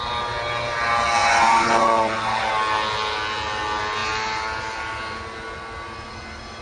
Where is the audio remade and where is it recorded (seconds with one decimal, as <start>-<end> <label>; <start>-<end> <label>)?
0.0-1.2 recorded; 1.2-2.5 remade; 2.5-6.6 recorded